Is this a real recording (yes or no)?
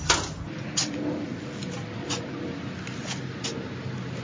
yes